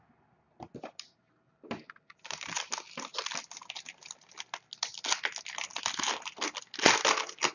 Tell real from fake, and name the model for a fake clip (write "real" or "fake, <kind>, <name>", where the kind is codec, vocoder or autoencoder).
real